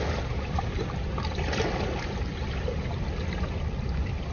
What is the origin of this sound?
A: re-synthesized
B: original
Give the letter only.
B